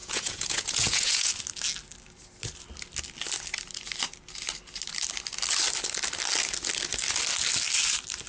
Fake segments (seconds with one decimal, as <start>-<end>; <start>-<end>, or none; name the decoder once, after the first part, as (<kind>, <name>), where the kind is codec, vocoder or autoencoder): 0.0-1.3 (vocoder, Vocos)